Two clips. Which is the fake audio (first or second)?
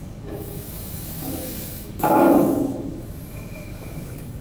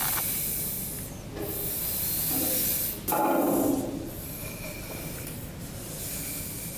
first